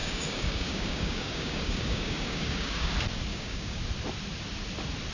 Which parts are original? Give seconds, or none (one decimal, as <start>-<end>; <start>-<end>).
2.9-3.3; 3.8-5.1